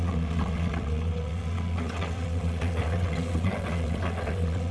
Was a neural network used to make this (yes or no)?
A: yes